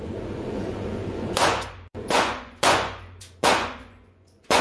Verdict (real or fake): fake